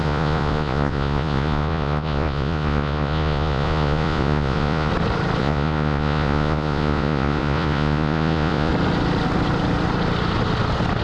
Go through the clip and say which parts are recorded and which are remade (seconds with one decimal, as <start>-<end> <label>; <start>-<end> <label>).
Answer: 0.0-4.9 remade; 4.9-5.4 recorded; 5.4-8.7 remade; 8.7-11.0 recorded